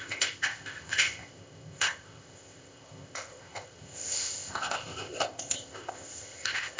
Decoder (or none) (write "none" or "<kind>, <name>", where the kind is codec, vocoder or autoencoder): codec, ZipCodec